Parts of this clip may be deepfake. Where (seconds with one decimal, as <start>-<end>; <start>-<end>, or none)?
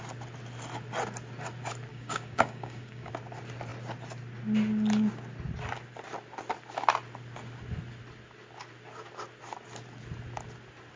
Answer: 1.9-3.1